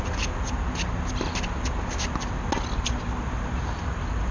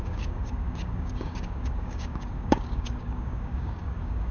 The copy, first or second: second